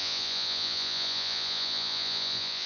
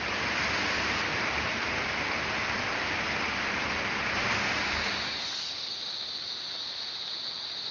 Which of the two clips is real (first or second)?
second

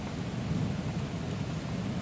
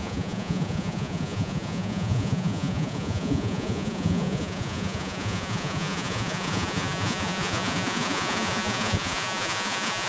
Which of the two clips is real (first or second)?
first